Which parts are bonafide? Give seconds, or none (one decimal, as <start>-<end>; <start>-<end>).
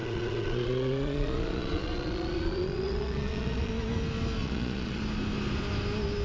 3.7-4.4; 5.0-6.2